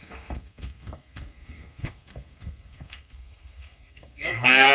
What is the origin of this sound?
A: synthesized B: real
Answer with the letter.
A